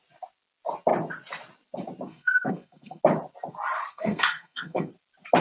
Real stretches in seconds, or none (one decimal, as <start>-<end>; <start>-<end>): 0.0-2.1; 3.0-3.9; 4.9-5.4